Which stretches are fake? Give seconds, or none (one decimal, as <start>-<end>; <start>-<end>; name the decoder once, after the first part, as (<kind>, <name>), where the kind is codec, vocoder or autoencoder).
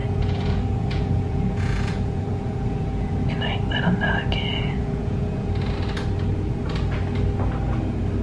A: 0.0-3.3 (vocoder, Vocos); 4.5-5.5